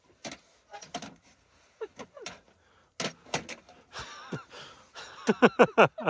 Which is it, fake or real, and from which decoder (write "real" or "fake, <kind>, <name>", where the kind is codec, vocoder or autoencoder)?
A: real